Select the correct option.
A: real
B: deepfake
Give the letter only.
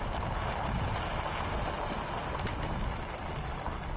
A